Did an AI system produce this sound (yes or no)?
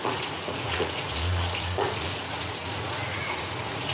yes